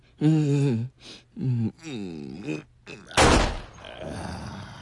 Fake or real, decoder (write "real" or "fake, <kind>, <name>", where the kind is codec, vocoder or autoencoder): real